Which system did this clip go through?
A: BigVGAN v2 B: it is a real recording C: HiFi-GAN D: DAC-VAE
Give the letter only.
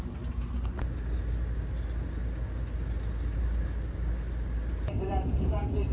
B